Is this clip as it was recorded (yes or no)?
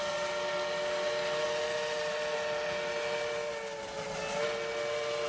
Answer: yes